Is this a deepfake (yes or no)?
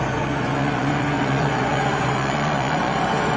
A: yes